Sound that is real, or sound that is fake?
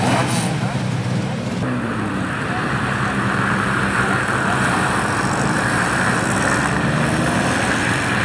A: real